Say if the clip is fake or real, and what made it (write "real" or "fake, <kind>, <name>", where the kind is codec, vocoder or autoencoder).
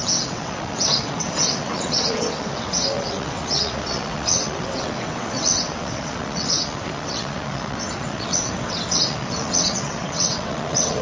fake, vocoder, WaveNeXt